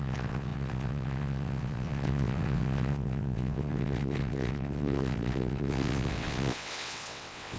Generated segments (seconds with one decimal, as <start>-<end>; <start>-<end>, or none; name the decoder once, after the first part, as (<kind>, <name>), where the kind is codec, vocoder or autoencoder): 0.0-7.6 (vocoder, WaveNeXt)